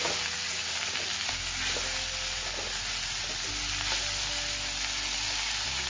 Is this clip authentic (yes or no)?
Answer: yes